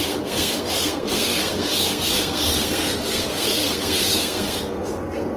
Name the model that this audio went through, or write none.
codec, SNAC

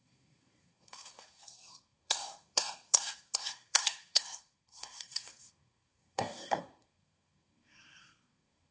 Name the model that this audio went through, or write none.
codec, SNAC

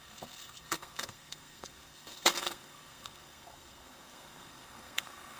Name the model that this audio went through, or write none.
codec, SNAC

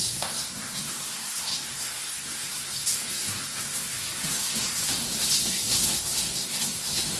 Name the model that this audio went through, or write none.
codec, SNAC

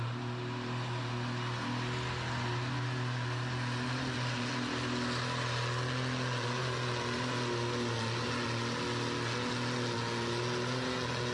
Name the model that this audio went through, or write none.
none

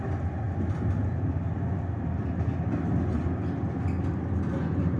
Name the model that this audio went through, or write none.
none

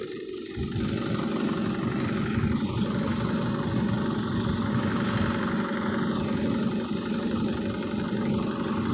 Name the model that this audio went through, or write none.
none